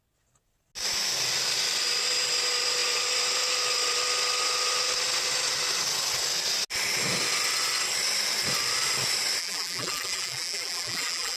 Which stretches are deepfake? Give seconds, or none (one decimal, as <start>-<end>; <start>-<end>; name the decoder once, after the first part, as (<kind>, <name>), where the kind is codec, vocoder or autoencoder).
9.4-11.4 (vocoder, BigVGAN v2)